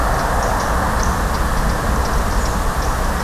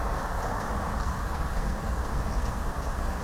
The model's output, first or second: second